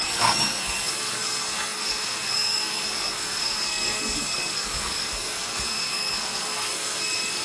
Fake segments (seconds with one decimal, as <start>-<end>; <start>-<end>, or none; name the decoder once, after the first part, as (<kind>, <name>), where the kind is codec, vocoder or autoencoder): 0.0-7.4 (codec, SNAC)